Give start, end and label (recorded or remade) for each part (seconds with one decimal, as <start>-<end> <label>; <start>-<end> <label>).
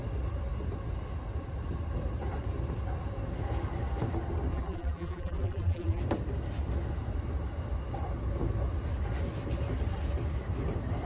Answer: 0.0-4.5 recorded; 4.5-6.0 remade; 6.0-11.1 recorded